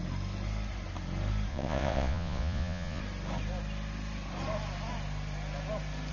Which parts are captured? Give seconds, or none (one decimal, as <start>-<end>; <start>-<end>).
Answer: 0.0-1.5; 3.0-6.1